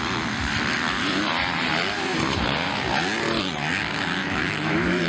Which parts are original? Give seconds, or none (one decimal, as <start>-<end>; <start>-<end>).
0.0-4.2